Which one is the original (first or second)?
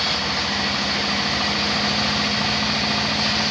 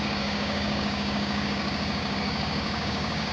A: first